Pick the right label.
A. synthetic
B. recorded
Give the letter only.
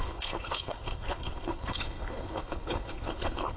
A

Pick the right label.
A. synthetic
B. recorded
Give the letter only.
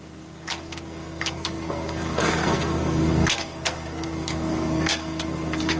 A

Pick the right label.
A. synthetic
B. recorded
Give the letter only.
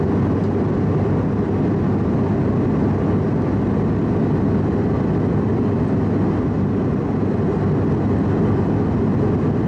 B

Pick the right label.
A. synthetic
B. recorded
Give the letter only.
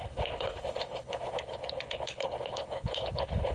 A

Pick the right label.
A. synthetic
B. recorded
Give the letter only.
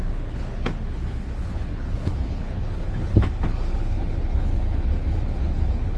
A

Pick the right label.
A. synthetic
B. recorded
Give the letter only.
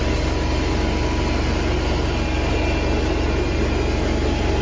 B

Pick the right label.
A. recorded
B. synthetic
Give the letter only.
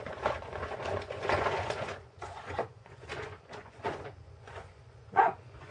B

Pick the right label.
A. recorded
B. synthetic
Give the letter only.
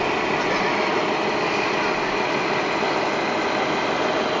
A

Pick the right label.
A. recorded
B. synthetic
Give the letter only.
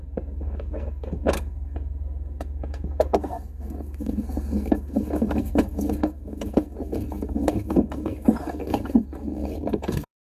B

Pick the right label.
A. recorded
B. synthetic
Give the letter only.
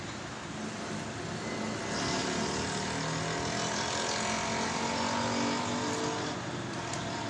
A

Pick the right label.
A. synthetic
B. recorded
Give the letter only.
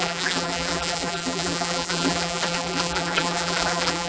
A